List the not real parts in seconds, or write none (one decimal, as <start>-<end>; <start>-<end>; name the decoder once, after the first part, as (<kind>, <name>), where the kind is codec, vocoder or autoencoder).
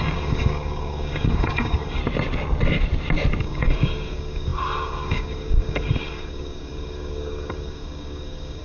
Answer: 0.0-2.0 (codec, DAC); 3.4-8.6